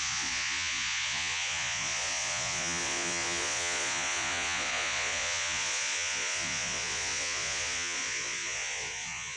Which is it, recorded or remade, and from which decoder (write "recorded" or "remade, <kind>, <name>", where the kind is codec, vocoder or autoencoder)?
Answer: remade, vocoder, Vocos